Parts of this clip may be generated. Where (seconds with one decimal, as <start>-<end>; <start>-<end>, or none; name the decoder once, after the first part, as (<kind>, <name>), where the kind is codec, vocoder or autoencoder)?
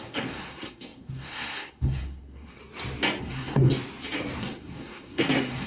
0.0-2.6 (codec, SNAC); 3.2-3.7; 4.4-5.7